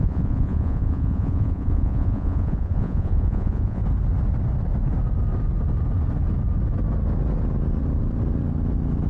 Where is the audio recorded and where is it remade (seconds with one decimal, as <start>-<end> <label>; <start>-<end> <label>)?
0.0-3.8 remade; 3.8-9.1 recorded